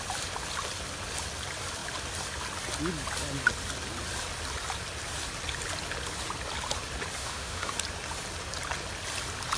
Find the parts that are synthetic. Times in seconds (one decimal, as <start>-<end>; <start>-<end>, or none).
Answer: 7.2-7.7